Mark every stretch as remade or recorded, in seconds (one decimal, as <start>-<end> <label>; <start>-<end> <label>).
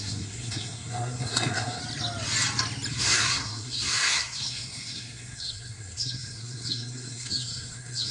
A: 0.0-1.8 remade; 1.8-2.9 recorded; 2.9-8.1 remade